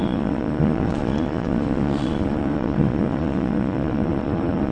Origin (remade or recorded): remade